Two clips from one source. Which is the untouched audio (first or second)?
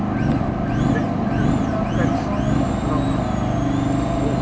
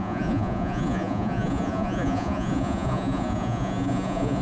first